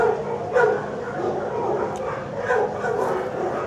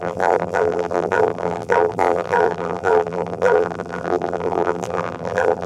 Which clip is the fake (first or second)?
second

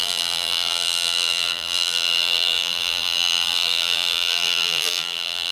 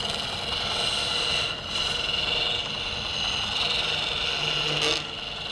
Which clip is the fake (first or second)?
first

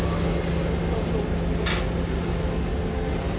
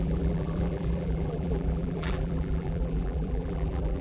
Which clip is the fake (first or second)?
second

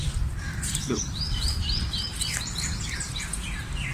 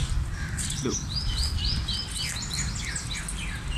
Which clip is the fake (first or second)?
first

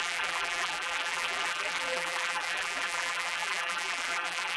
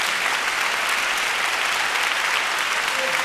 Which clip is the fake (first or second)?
first